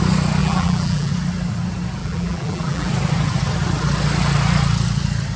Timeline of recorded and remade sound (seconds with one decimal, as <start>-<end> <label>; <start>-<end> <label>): 0.0-0.4 recorded; 0.4-1.1 remade; 1.1-2.0 recorded; 2.0-2.9 remade; 2.9-5.4 recorded